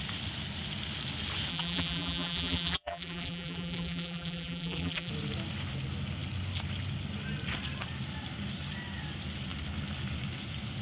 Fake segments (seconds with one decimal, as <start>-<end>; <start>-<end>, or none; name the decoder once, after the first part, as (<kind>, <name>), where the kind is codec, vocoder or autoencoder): 1.5-5.1 (vocoder, BigVGAN v2)